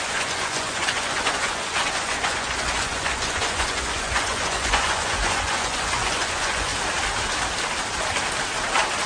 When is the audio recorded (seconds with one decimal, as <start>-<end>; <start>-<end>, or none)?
6.7-9.1